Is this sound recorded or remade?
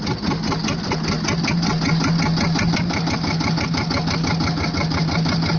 recorded